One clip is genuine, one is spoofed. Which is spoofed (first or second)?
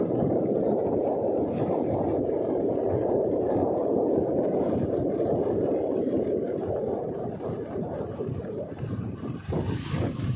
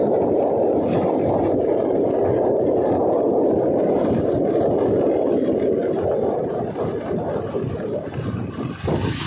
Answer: first